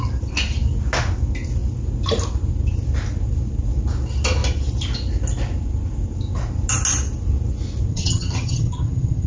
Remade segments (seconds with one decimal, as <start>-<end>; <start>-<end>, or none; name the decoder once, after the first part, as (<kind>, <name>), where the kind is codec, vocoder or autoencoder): 7.9-9.3 (vocoder, HiFi-GAN)